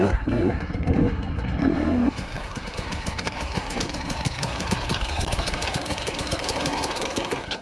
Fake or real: fake